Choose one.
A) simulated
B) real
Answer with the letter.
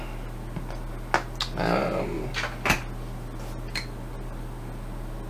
B